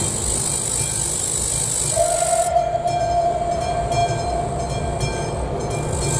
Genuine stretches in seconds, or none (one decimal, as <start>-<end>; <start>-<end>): 0.0-6.2